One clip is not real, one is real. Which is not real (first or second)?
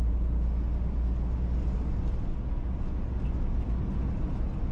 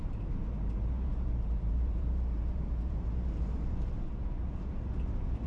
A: second